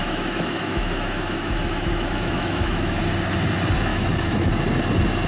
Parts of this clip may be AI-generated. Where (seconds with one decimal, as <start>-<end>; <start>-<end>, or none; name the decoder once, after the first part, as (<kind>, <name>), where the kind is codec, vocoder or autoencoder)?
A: 0.0-3.0 (autoencoder, DAC-VAE); 3.9-4.5